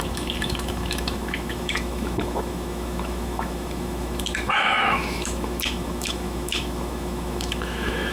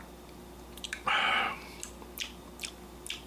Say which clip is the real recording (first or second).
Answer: second